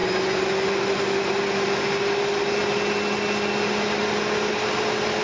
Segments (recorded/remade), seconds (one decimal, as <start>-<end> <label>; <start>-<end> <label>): 0.0-5.2 recorded